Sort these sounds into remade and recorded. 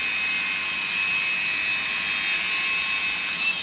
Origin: recorded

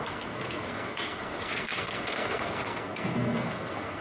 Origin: remade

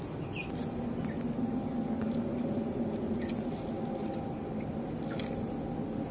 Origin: recorded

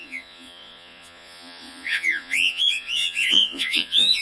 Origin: remade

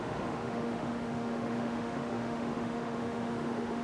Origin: remade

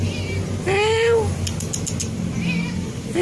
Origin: recorded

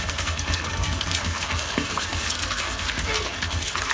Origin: remade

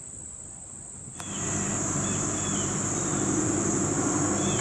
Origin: recorded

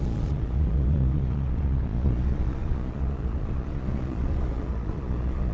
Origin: remade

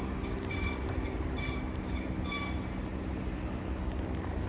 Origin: recorded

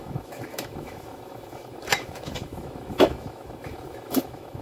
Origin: remade